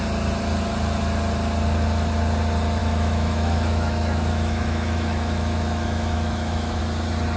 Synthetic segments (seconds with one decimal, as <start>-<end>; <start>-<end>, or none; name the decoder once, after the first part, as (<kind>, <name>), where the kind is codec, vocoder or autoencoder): 2.8-6.8 (autoencoder, DAC-VAE)